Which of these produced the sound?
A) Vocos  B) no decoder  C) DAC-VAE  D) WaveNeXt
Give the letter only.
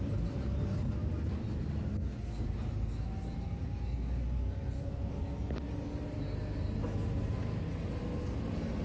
B